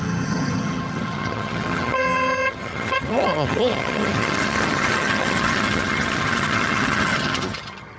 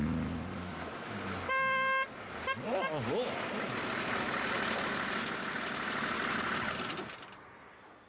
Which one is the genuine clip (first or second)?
second